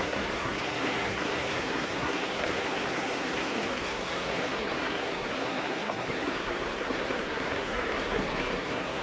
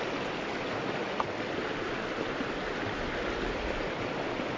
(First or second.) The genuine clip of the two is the second